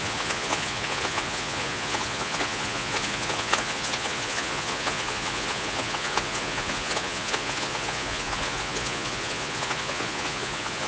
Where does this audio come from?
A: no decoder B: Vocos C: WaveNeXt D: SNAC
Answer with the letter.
B